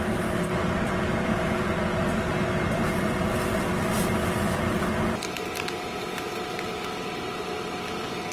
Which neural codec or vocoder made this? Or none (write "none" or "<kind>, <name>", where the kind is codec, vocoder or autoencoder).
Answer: none